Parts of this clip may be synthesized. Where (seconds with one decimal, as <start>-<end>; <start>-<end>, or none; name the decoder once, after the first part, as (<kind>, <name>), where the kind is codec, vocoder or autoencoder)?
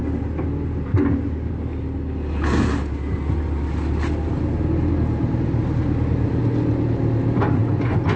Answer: 0.9-1.5 (codec, DAC)